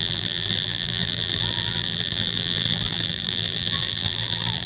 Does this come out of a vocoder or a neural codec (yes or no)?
yes